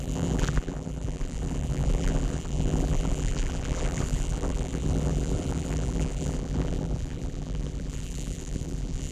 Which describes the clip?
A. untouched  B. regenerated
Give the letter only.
B